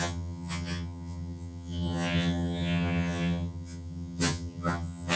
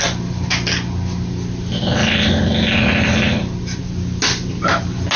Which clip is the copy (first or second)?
first